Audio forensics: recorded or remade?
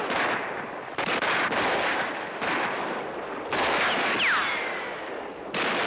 recorded